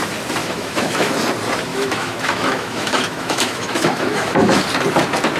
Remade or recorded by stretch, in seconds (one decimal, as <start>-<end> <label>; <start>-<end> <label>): 0.0-0.4 recorded; 0.4-1.2 remade; 1.2-1.7 recorded; 1.7-4.6 remade; 4.6-5.4 recorded